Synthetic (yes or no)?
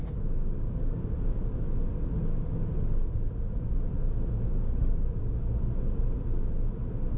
no